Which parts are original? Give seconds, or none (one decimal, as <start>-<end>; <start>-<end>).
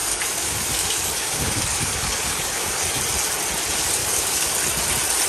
2.8-4.0; 4.5-5.3